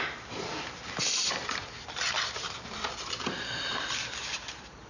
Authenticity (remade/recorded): remade